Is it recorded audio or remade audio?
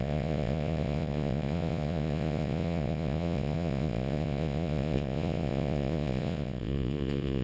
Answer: remade